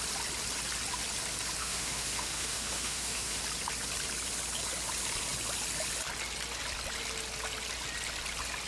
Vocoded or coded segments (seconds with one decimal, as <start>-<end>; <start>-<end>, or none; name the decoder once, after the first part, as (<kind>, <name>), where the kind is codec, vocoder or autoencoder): 1.6-3.4 (autoencoder, DAC-VAE)